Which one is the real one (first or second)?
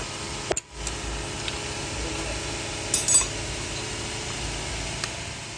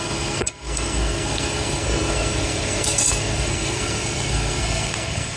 first